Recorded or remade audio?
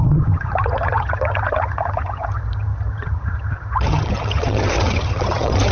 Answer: remade